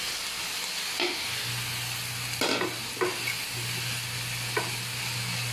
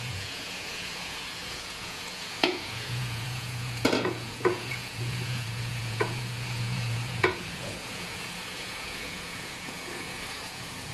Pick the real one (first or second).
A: first